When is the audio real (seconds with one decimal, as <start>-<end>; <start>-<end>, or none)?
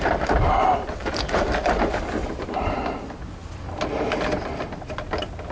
0.0-1.0; 2.8-5.5